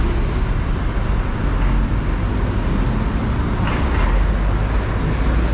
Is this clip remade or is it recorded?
recorded